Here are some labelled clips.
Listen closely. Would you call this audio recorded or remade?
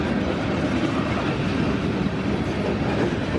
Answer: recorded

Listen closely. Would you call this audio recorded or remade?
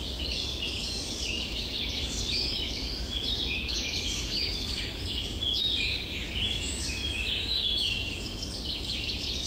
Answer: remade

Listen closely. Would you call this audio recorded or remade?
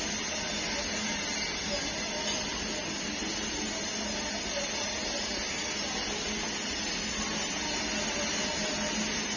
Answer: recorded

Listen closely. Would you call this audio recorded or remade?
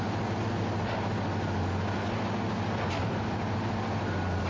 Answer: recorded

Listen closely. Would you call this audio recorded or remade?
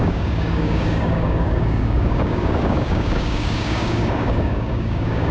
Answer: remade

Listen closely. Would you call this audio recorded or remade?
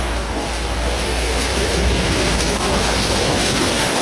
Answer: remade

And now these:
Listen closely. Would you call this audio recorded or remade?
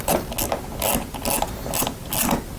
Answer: recorded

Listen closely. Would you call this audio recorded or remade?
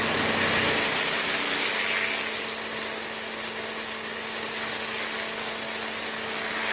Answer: recorded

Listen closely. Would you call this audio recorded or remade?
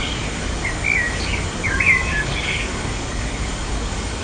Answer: remade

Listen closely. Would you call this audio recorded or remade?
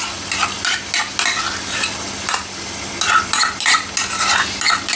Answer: recorded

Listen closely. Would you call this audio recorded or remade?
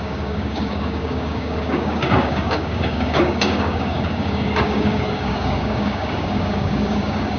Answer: remade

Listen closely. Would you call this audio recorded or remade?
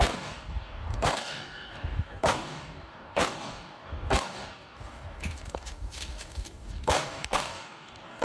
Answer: remade